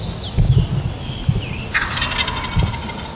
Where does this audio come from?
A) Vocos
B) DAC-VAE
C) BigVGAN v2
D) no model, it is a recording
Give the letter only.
D